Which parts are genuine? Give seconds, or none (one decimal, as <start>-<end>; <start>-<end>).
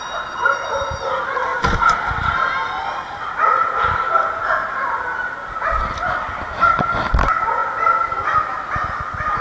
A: 0.0-1.5; 2.3-2.8; 3.3-9.4